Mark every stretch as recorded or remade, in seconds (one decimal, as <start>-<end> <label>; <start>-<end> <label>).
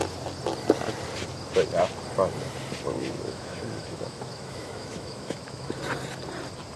0.0-3.0 recorded; 3.0-5.8 remade; 5.8-6.8 recorded